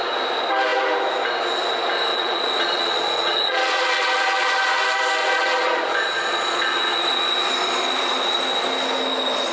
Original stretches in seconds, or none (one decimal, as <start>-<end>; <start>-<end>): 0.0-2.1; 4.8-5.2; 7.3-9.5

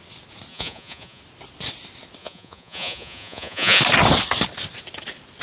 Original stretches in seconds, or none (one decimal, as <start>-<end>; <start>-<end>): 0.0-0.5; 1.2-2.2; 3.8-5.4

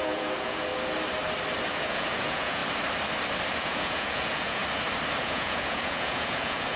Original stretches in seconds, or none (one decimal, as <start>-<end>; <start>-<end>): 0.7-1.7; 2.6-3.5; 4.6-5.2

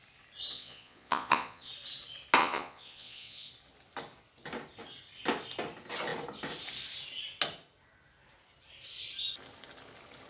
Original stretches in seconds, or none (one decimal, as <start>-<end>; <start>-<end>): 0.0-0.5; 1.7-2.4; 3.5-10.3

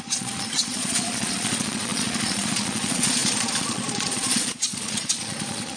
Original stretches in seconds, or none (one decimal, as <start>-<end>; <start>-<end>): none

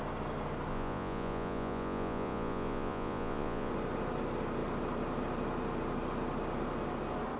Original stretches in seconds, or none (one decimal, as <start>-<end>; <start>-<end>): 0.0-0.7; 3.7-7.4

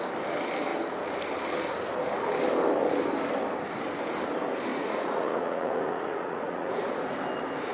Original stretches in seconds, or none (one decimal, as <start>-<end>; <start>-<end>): 0.0-4.7; 7.2-7.7

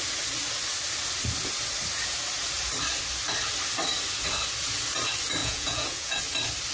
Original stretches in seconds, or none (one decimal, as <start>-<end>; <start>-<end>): 0.0-5.4; 6.2-6.7